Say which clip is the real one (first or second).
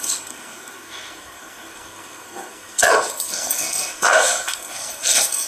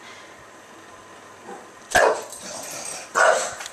second